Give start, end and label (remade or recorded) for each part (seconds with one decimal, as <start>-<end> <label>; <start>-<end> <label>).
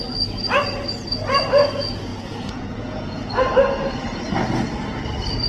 0.0-2.1 recorded; 2.1-3.3 remade; 3.3-5.5 recorded